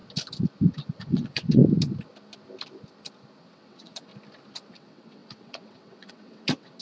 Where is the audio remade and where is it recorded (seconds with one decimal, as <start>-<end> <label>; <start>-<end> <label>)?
0.0-1.0 recorded; 1.0-1.6 remade; 1.6-3.4 recorded; 3.4-4.1 remade; 4.1-4.7 recorded; 4.7-6.8 remade